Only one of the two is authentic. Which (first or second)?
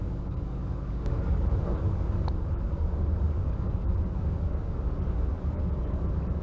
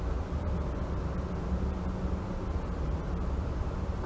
second